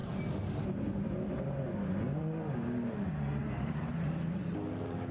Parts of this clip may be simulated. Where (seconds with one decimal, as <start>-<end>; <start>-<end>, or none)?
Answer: 3.4-3.9